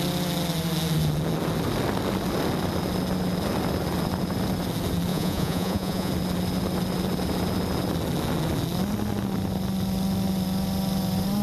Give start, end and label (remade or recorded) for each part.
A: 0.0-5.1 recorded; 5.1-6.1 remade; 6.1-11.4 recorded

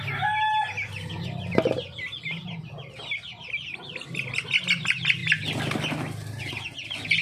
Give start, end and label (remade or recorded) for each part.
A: 0.0-7.2 recorded